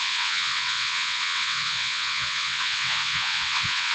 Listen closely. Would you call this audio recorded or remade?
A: remade